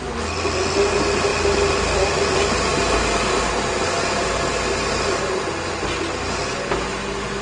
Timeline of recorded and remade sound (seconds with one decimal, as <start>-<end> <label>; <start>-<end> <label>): 0.0-7.4 recorded